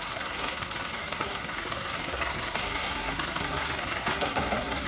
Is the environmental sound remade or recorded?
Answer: remade